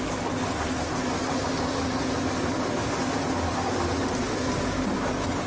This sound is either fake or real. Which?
real